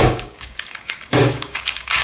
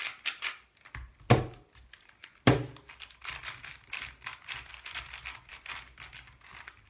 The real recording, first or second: second